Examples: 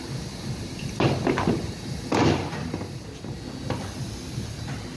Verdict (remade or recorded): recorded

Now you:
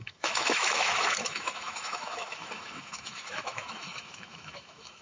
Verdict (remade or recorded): remade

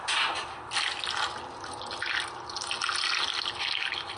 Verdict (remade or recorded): recorded